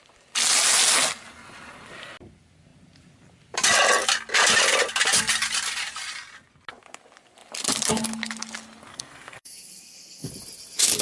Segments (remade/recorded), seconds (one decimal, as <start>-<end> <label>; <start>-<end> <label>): 0.0-8.9 recorded; 8.9-10.3 remade; 10.3-11.0 recorded

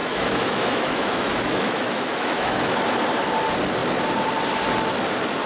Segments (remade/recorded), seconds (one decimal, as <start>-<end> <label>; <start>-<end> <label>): 0.0-2.8 remade; 2.8-5.5 recorded

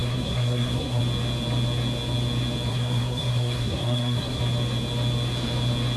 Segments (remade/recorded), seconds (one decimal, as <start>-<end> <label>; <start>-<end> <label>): 0.0-1.0 remade; 1.0-2.7 recorded; 2.7-4.4 remade; 4.4-6.0 recorded